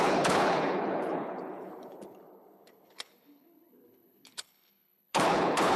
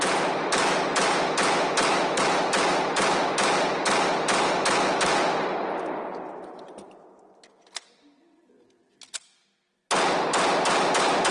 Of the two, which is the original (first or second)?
second